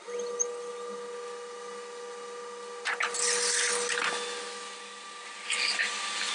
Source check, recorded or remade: recorded